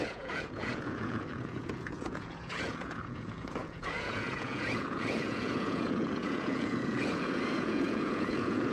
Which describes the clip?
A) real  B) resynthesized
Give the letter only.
B